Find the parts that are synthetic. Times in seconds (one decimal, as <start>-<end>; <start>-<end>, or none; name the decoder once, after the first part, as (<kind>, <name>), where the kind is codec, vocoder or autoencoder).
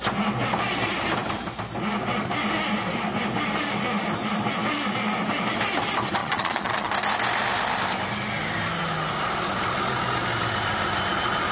6.2-6.9 (vocoder, Vocos)